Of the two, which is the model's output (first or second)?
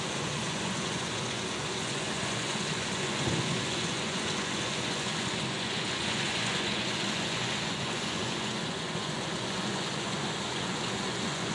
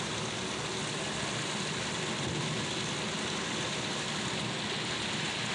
first